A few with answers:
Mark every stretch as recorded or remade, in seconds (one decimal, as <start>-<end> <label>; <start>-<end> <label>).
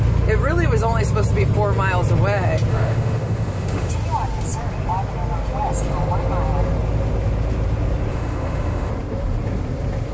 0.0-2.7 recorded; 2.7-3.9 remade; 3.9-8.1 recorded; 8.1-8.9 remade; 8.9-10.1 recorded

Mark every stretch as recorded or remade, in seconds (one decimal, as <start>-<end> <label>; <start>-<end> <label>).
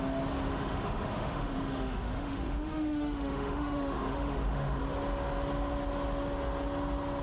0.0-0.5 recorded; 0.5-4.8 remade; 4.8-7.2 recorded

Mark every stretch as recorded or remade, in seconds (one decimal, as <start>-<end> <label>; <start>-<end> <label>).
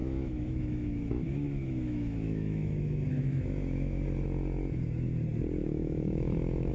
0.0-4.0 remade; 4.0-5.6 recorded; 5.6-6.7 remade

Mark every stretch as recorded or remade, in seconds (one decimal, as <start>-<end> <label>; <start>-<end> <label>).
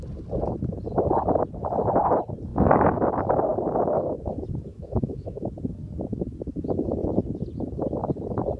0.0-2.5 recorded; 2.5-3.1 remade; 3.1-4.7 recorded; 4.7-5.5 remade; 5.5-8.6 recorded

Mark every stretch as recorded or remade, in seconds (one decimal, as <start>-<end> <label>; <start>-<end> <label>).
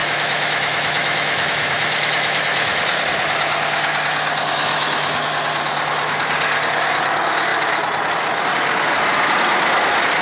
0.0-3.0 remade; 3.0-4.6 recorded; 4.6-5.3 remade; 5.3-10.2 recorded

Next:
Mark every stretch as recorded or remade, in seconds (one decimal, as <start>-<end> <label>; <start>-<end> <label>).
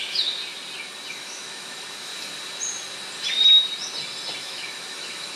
0.0-0.4 remade; 0.4-1.1 recorded; 1.1-2.1 remade; 2.1-4.4 recorded; 4.4-5.4 remade